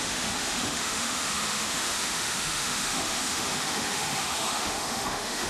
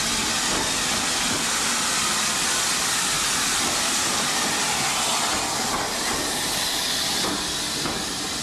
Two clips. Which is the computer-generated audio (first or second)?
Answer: first